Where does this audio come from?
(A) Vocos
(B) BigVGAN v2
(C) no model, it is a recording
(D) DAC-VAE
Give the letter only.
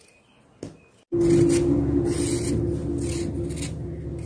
C